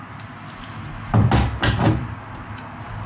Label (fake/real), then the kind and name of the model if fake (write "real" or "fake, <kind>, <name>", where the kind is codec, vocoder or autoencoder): real